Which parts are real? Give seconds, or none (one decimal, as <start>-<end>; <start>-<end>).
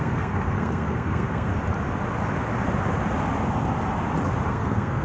1.5-4.5